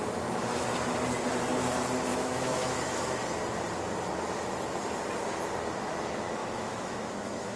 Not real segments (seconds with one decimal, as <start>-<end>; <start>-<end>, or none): 2.1-3.2; 6.4-7.6